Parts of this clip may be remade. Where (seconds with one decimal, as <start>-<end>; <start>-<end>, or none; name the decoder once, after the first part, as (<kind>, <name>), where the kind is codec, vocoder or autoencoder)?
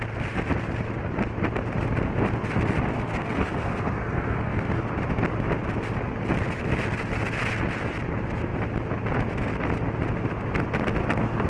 2.9-4.8 (codec, SNAC)